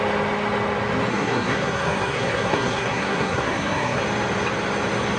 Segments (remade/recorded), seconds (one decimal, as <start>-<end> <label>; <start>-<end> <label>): 0.0-1.1 recorded; 1.1-4.0 remade; 4.0-5.2 recorded